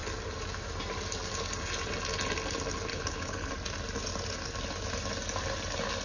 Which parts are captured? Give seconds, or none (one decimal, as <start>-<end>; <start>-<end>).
0.0-2.9; 3.5-6.0